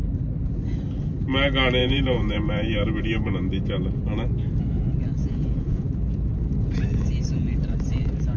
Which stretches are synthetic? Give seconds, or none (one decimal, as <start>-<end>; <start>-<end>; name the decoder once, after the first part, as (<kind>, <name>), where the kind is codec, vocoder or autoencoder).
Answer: 1.8-4.0 (vocoder, Vocos); 5.2-5.8